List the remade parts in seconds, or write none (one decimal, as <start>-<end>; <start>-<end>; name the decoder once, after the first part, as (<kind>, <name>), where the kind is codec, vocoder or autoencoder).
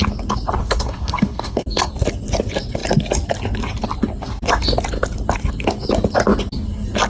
0.6-1.9 (codec, SNAC)